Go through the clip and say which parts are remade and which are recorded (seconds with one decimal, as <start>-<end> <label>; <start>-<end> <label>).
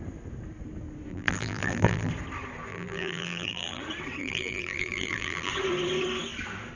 0.0-1.1 recorded; 1.1-2.1 remade; 2.1-2.7 recorded; 2.7-3.8 remade; 3.8-4.2 recorded; 4.2-5.5 remade; 5.5-6.8 recorded